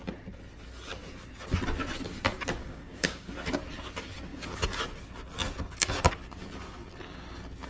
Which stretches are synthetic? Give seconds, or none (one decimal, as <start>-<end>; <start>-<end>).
2.6-3.3